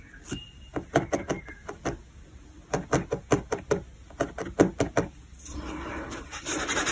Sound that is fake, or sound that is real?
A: real